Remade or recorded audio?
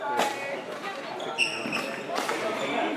recorded